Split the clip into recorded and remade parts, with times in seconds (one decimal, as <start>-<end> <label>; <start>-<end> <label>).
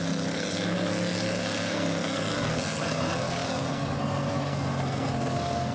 0.0-5.7 remade